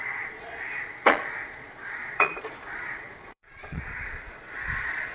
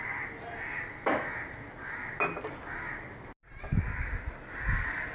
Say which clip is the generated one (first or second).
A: first